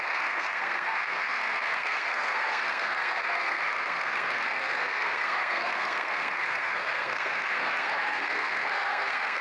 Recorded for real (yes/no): no